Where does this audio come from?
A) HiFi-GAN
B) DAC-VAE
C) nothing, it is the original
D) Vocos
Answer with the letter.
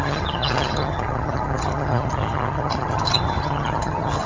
A